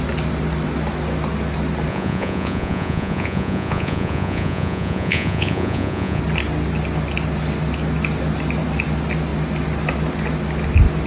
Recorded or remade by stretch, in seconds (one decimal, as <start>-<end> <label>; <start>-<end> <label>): 0.0-1.9 recorded; 1.9-6.2 remade; 6.2-11.1 recorded